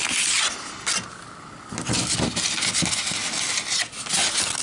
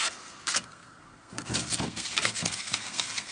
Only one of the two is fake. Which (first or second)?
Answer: second